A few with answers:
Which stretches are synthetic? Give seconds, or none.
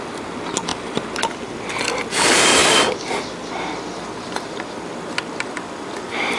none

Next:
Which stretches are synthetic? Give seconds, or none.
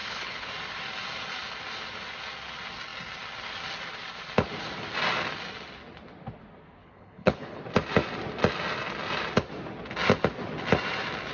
0.0-0.5 (codec, HILCodec); 6.8-7.6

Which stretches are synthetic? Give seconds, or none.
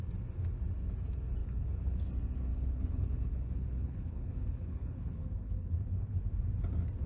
1.4-2.0 (codec, HILCodec); 2.5-6.2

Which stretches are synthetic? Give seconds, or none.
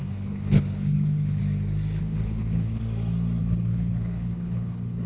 0.0-1.4 (codec, HILCodec); 2.0-2.8; 3.4-5.1